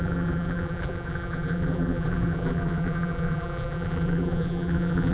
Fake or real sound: fake